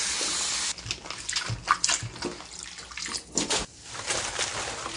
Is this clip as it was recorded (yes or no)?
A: yes